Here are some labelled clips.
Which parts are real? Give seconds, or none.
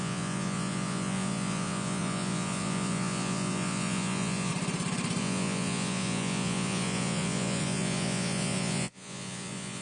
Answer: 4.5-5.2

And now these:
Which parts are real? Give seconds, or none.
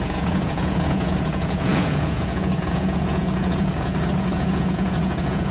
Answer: none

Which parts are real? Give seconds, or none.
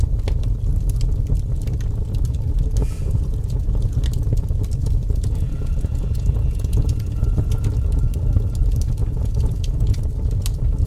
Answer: 0.0-2.8; 4.0-4.8; 7.7-9.0; 10.0-10.9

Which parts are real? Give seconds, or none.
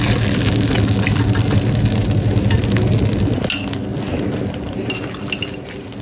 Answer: 0.0-6.0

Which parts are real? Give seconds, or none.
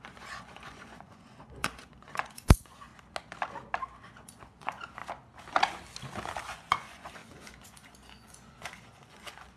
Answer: 2.9-4.0; 5.0-6.4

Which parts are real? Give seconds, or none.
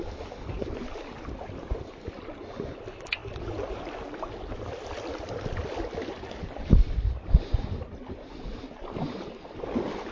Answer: 0.0-10.1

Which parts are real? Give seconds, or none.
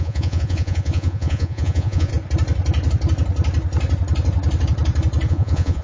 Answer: 2.1-5.3